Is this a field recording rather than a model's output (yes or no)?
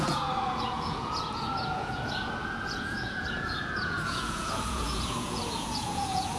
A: no